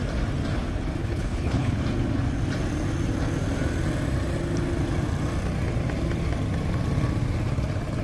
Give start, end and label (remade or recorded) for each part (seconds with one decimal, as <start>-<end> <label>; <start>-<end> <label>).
0.0-1.0 recorded; 1.0-1.8 remade; 1.8-8.0 recorded